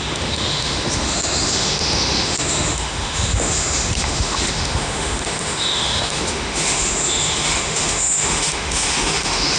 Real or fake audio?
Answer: fake